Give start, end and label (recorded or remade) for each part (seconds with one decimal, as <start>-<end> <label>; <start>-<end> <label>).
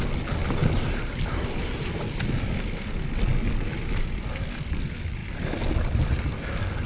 0.0-6.9 recorded